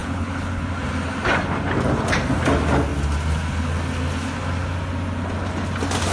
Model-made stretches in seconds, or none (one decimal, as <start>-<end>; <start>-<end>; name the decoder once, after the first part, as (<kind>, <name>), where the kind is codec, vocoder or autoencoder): 0.0-0.6 (codec, HILCodec)

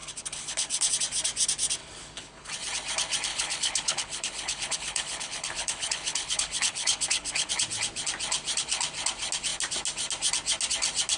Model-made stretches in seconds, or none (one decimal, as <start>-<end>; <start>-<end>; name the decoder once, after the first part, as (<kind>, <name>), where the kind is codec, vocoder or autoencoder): 0.0-0.9 (codec, HILCodec); 1.8-2.5; 3.3-7.5

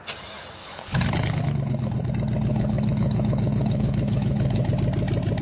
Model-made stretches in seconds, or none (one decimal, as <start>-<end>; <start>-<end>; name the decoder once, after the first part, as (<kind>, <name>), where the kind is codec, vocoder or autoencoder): 0.6-2.1 (codec, HILCodec); 2.5-4.7

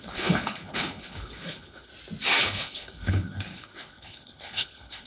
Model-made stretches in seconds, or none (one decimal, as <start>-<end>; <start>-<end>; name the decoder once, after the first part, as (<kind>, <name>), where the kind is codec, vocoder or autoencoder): 0.0-1.9 (codec, HILCodec); 2.4-5.1

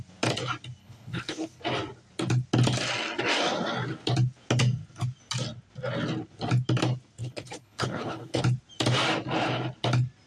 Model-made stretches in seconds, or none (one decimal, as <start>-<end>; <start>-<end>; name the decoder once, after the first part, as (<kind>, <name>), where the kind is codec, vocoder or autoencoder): 0.8-1.6 (codec, HILCodec); 7.2-8.4